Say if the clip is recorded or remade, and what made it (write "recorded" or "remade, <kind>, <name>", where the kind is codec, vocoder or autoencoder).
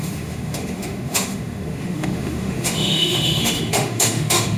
remade, autoencoder, DAC-VAE